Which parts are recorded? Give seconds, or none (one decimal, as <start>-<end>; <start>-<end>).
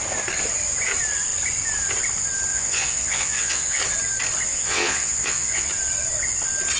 0.0-2.5; 3.8-4.5; 5.7-6.8